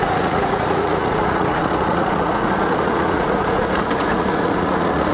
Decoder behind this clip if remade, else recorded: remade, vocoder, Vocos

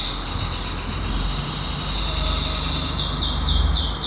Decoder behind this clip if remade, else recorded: recorded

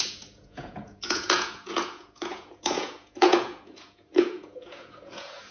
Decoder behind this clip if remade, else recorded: remade, vocoder, Vocos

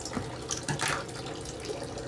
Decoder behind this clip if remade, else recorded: recorded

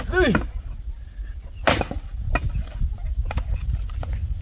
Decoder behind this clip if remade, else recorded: recorded